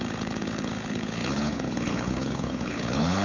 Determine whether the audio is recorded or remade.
remade